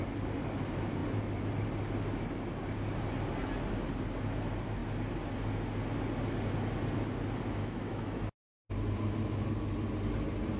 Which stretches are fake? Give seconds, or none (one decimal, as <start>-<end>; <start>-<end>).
7.6-8.7